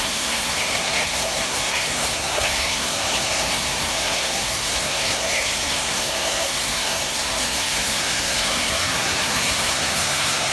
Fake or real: fake